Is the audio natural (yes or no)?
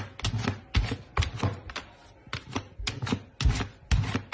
yes